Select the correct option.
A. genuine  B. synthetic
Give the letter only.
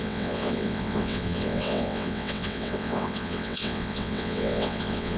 B